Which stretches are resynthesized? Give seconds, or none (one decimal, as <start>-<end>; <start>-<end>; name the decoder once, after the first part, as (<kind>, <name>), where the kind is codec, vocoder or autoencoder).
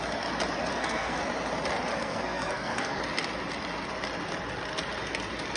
0.7-1.2 (codec, SNAC); 1.9-3.0